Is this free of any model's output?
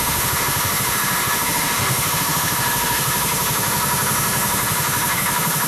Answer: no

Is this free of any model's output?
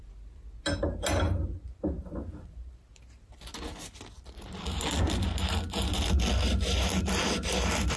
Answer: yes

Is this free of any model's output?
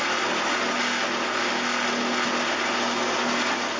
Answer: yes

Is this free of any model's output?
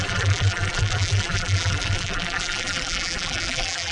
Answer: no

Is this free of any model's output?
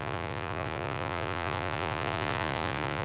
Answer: no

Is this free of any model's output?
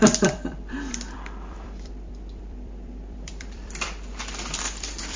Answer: no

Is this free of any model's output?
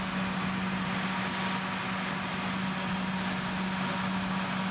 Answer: yes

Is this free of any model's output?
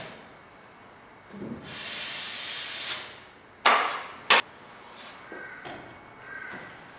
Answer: yes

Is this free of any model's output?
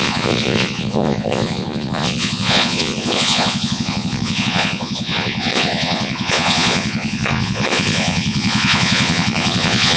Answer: no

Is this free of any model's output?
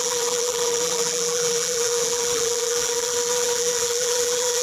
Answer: no